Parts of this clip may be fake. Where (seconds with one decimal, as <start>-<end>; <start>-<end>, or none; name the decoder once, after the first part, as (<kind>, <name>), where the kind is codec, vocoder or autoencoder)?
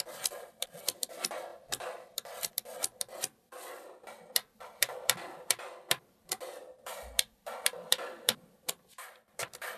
0.0-9.8 (vocoder, BigVGAN v2)